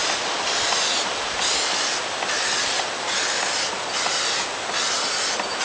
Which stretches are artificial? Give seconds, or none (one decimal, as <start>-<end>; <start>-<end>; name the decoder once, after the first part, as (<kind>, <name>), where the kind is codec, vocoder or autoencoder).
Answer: none